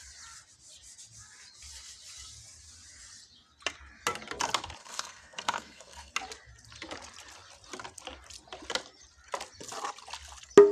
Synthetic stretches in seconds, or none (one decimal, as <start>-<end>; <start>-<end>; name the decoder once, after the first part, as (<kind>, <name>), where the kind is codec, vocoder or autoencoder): 4.8-6.1 (codec, SNAC)